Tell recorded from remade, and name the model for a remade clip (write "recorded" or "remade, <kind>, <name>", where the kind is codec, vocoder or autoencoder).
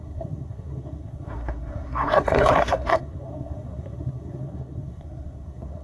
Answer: remade, codec, SNAC